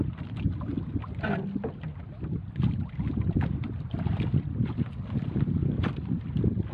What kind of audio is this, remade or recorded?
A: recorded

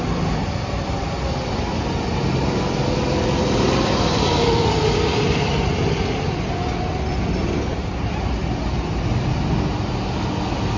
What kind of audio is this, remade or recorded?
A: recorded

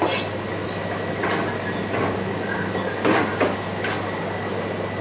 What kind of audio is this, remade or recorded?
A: recorded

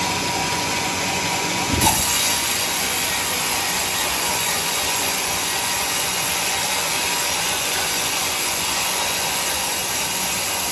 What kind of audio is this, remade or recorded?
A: remade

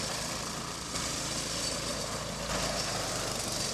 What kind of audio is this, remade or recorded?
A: recorded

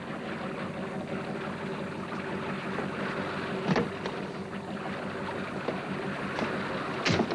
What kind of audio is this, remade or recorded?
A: recorded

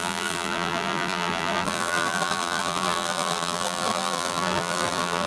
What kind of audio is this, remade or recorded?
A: remade